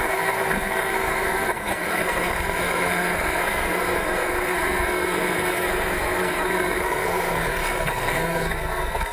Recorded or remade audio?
remade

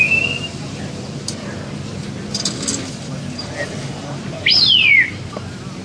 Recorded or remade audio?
recorded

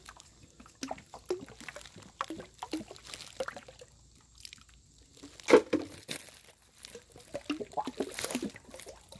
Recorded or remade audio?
recorded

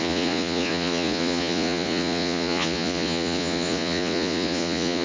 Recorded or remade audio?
remade